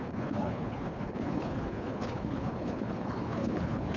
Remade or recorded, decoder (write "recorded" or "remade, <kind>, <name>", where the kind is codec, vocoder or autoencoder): remade, codec, HILCodec